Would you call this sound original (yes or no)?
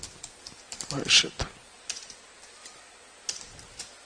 yes